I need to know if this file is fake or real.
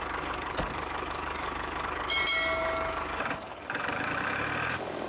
fake